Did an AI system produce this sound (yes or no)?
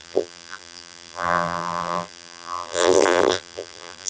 yes